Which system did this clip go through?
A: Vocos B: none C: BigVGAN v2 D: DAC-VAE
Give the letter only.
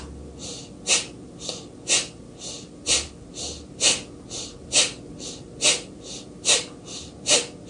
B